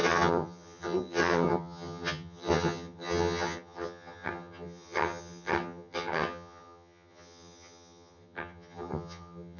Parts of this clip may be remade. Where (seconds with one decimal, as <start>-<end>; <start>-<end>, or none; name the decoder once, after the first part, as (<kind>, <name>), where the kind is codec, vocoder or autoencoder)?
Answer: 0.0-9.6 (vocoder, HiFi-GAN)